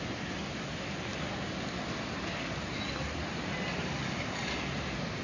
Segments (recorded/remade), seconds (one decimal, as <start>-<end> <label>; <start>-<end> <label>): 0.0-5.2 recorded